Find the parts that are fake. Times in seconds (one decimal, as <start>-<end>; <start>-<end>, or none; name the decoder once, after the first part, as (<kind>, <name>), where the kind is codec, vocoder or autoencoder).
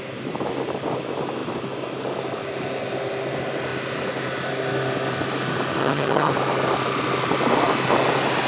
5.8-6.3 (vocoder, HiFi-GAN)